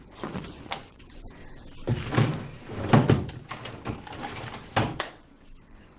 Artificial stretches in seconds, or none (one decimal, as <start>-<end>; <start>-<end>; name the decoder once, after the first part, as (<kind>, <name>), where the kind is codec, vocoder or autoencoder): 0.0-1.4 (vocoder, Vocos); 5.0-6.0